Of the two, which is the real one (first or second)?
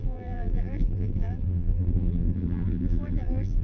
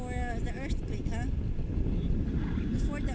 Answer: second